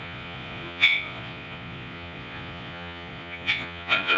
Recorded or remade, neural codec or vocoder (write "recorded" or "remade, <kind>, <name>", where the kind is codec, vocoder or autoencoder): remade, vocoder, Vocos